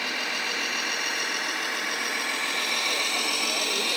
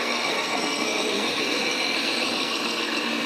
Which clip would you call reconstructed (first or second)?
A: second